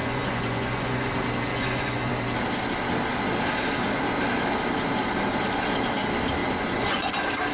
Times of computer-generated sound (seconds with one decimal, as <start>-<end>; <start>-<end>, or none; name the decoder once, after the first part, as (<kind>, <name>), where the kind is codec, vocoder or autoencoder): 0.0-1.1 (vocoder, Vocos); 1.5-2.1; 6.4-7.1